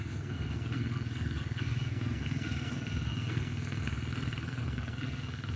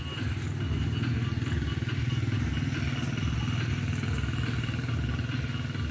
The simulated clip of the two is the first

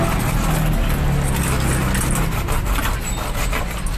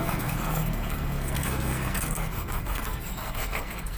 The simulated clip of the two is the second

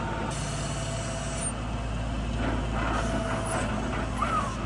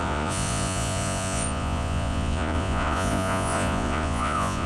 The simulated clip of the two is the second